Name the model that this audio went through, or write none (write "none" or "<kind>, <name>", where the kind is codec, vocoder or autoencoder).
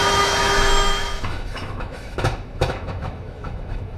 autoencoder, DAC-VAE